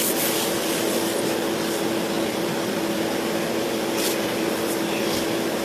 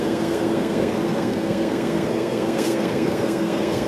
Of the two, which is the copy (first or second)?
second